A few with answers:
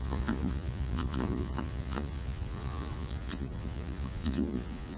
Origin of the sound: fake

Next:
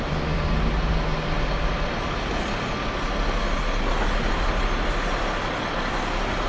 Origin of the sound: real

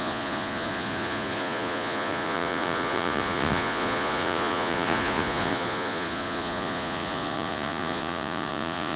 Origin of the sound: fake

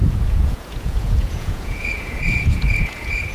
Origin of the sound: fake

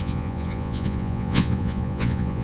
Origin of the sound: fake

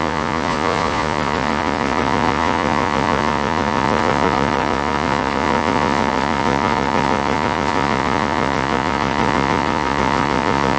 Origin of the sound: fake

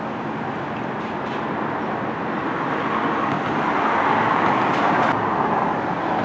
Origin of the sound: real